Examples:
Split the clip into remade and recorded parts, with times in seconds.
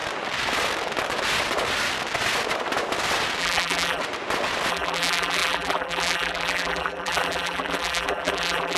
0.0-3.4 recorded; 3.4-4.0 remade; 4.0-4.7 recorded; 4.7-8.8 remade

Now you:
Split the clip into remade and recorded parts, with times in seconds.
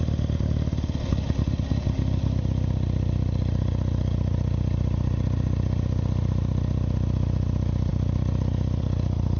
0.0-9.4 recorded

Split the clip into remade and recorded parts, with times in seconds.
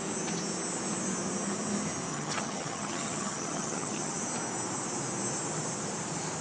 0.0-2.1 recorded; 2.1-4.2 remade; 4.2-6.4 recorded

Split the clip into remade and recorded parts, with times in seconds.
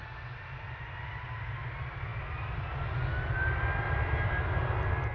0.0-5.1 recorded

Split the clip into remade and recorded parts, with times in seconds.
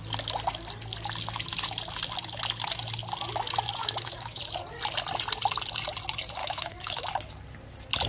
0.0-3.8 recorded; 3.8-4.4 remade; 4.4-6.4 recorded; 6.4-7.1 remade; 7.1-8.1 recorded